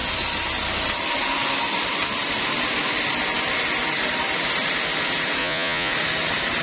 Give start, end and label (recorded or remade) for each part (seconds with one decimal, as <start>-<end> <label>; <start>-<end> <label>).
0.0-5.4 recorded; 5.4-5.9 remade; 5.9-6.6 recorded